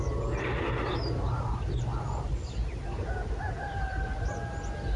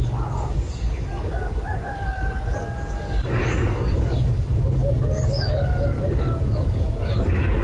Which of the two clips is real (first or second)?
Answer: first